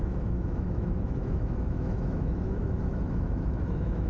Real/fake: fake